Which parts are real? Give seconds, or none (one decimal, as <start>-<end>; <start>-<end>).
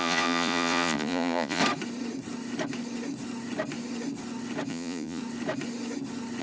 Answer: 1.6-4.7; 5.2-6.4